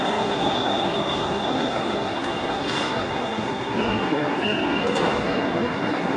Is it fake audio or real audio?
fake